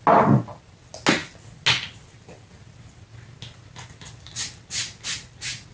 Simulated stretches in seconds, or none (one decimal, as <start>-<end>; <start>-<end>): none